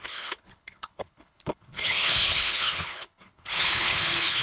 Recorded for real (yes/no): no